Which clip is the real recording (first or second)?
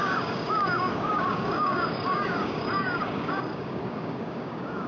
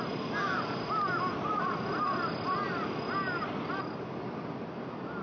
second